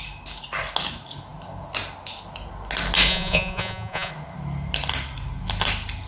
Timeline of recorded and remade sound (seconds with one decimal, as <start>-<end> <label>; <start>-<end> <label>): 0.0-3.1 recorded; 3.1-4.1 remade; 4.1-6.1 recorded